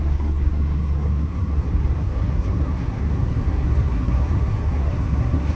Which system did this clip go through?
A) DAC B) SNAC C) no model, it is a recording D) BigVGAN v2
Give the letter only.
B